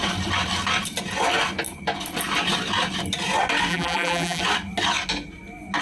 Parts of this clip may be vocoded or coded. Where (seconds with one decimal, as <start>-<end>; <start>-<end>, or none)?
3.7-4.4